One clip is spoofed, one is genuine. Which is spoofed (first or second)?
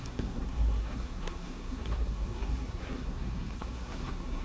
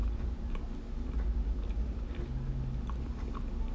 first